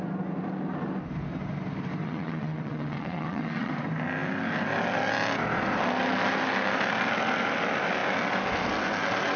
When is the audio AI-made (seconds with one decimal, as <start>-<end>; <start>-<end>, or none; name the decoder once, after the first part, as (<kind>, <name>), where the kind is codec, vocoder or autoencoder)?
2.0-3.7 (vocoder, WaveNeXt)